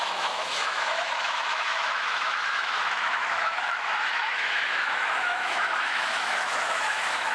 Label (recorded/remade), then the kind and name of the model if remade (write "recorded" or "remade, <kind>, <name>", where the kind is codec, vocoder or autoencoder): remade, autoencoder, DAC-VAE